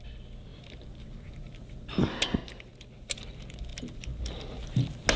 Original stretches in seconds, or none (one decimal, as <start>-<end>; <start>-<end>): 0.0-5.2